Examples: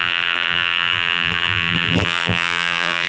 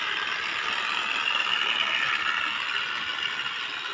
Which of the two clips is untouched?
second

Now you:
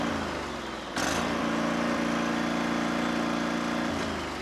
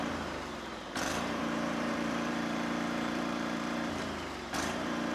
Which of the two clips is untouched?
first